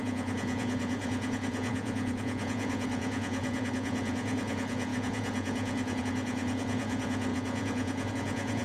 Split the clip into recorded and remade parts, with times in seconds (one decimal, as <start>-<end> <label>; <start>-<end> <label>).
0.0-8.6 remade